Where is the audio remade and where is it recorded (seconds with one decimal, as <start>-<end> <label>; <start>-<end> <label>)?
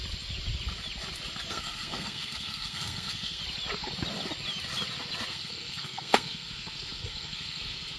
0.0-1.5 recorded; 1.5-3.4 remade; 3.4-5.3 recorded; 5.3-8.0 remade